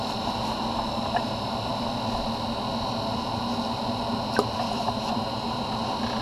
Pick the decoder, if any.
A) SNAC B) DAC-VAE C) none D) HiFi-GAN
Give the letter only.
C